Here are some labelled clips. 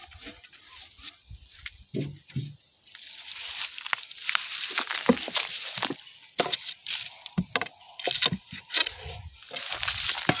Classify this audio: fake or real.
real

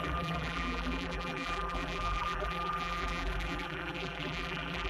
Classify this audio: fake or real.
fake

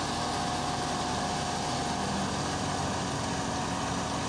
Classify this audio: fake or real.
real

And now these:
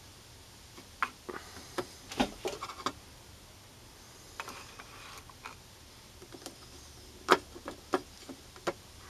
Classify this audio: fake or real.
real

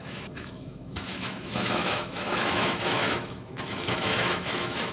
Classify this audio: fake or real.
fake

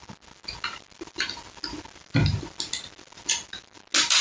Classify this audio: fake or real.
real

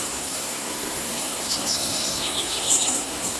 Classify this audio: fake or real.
fake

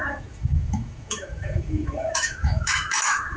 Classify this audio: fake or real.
fake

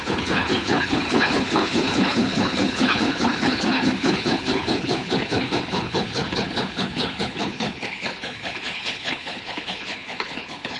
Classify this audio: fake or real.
fake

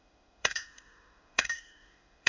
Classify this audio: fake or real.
fake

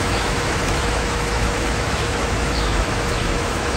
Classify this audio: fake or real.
fake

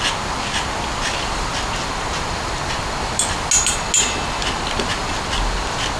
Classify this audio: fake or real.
real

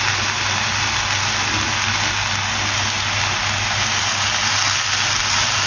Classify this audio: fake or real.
real